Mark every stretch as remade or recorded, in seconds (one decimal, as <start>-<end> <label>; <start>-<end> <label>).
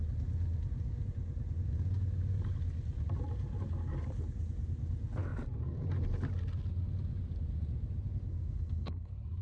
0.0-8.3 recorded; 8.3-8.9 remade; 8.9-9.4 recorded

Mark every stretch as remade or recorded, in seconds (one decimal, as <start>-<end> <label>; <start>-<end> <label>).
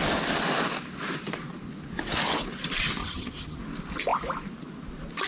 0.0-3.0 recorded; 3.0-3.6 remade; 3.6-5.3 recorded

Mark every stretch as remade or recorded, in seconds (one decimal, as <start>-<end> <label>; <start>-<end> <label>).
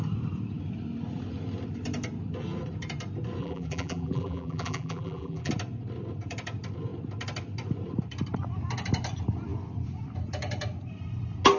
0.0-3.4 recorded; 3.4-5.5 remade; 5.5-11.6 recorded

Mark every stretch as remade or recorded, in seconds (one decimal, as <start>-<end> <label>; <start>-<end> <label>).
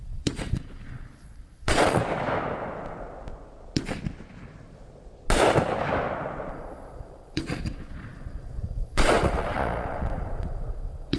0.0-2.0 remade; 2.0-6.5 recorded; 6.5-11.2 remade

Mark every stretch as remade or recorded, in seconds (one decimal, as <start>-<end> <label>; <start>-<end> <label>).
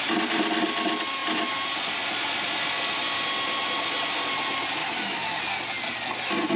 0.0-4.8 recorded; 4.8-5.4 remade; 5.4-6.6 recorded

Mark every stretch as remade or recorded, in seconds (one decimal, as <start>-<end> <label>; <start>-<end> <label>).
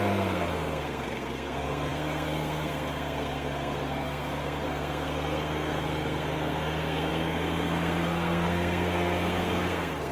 0.0-10.1 remade